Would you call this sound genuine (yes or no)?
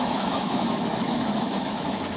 no